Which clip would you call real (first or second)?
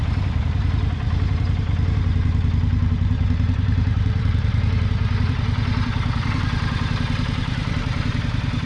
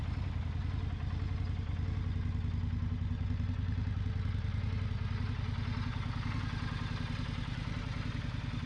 second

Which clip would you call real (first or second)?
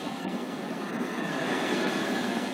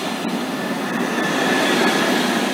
second